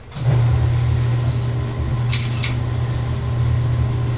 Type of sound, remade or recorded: recorded